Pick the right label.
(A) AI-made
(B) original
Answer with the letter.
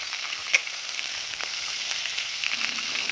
A